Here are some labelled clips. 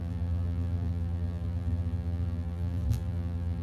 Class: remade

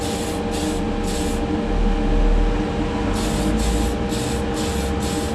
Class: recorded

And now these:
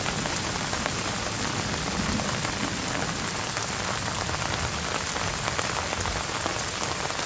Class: recorded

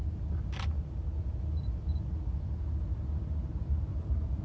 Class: recorded